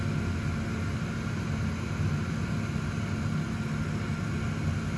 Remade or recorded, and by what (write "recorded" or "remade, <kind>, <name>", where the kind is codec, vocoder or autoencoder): recorded